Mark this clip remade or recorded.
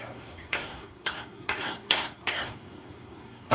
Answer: remade